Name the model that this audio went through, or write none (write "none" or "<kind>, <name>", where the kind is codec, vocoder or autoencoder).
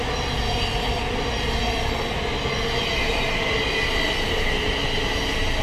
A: none